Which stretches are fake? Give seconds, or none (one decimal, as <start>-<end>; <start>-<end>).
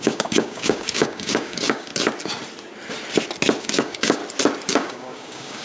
0.0-1.9; 3.6-4.2; 4.7-5.6